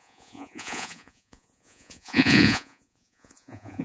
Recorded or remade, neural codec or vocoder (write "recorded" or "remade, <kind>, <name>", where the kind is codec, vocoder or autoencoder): remade, vocoder, Vocos